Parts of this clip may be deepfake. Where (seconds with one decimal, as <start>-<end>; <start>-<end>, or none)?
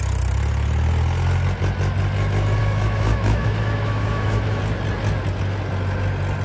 2.6-4.6